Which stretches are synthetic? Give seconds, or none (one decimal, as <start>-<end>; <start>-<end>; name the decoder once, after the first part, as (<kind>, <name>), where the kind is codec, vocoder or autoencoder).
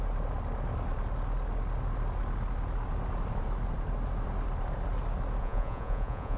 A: 5.4-6.4 (vocoder, Vocos)